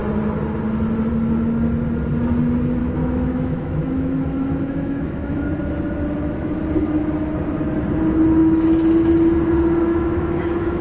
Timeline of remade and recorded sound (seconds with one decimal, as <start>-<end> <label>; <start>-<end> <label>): 0.0-2.8 recorded; 2.8-5.4 remade; 5.4-9.9 recorded; 9.9-10.8 remade